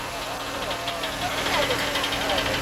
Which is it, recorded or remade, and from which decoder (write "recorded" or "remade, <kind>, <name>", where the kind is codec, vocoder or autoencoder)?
recorded